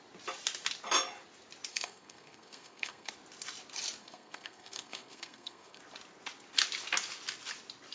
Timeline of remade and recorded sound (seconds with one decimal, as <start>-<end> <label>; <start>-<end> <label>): 0.0-1.7 recorded; 1.7-3.1 remade; 3.1-4.0 recorded; 4.0-5.8 remade; 5.8-7.9 recorded